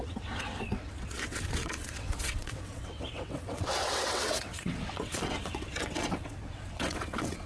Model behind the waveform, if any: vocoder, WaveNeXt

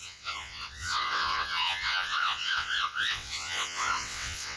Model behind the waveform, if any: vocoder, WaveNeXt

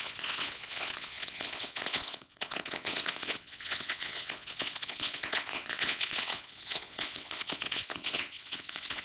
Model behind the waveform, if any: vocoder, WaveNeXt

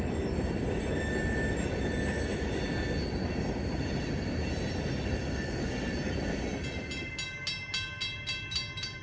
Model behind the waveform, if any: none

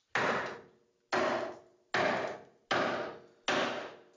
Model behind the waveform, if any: none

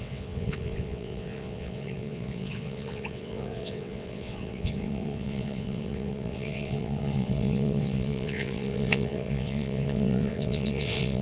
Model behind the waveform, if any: vocoder, WaveNeXt